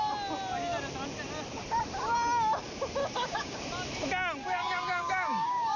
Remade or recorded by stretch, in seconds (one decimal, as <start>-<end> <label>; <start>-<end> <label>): 0.0-3.0 recorded; 3.0-3.6 remade; 3.6-4.4 recorded; 4.4-5.8 remade